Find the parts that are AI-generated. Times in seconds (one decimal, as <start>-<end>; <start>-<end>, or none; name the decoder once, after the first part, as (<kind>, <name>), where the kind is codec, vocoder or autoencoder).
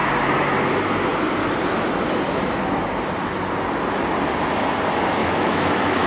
5.2-6.1 (autoencoder, DAC-VAE)